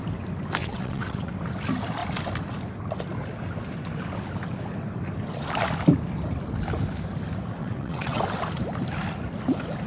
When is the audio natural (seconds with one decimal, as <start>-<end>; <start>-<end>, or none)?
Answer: 0.0-0.6; 1.3-7.6; 8.2-9.9